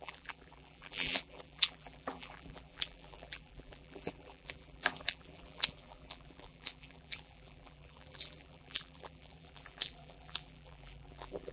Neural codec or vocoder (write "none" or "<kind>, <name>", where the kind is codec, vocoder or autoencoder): vocoder, BigVGAN v2